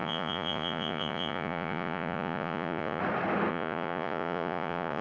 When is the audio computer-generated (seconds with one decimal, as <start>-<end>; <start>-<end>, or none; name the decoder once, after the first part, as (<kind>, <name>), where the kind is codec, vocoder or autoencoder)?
0.0-3.0 (vocoder, Vocos); 3.5-5.0